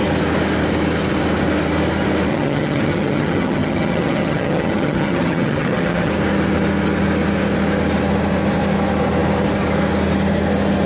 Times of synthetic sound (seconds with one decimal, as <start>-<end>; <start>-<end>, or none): 2.3-6.1